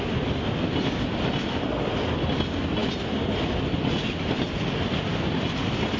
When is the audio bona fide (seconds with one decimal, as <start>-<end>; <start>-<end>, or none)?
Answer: 0.0-6.0